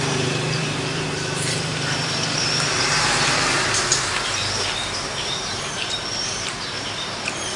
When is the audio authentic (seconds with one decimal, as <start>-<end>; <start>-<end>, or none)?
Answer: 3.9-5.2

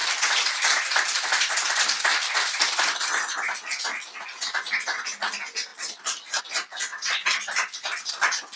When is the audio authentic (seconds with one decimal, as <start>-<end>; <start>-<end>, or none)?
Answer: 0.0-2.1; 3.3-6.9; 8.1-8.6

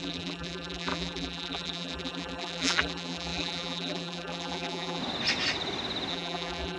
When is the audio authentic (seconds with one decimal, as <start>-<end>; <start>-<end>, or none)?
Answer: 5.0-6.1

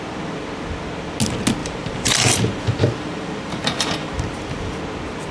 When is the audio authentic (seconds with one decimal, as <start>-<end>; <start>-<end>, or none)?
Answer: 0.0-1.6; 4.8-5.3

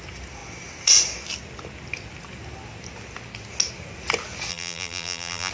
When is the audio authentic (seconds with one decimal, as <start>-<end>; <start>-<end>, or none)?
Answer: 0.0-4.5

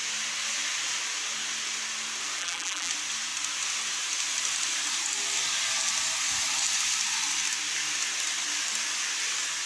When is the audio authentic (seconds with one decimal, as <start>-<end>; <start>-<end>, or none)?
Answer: 0.0-2.4; 2.9-9.7